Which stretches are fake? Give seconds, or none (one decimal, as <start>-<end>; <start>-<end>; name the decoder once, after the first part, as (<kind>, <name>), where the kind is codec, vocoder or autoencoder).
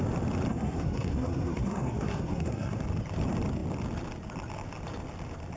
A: 0.5-2.8 (codec, SNAC)